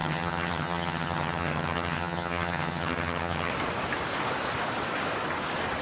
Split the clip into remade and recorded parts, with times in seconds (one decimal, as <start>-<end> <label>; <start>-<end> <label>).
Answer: 0.0-3.5 remade; 3.5-5.8 recorded